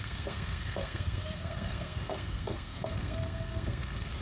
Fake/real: fake